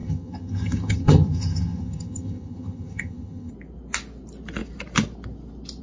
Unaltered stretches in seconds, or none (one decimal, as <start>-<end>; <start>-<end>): 3.5-5.8